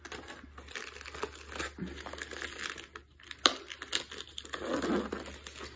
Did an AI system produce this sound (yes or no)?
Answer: no